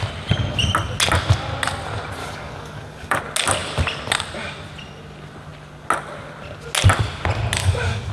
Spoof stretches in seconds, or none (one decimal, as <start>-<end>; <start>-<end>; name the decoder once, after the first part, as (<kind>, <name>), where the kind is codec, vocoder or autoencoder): 2.2-3.2 (codec, DAC); 7.6-8.1